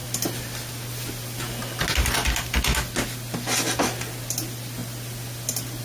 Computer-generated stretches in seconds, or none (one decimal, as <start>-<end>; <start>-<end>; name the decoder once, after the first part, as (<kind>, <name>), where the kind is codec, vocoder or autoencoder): none